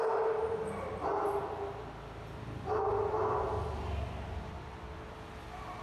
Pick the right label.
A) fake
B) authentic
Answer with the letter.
B